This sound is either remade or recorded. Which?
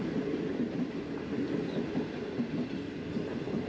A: recorded